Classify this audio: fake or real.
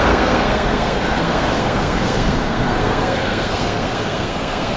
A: fake